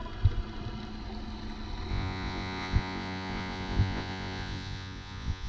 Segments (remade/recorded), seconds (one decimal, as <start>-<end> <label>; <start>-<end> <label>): 0.0-1.9 recorded; 1.9-5.5 remade